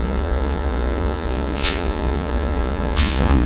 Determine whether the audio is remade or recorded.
remade